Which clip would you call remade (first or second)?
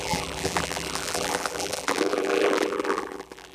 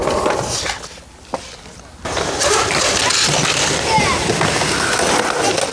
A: first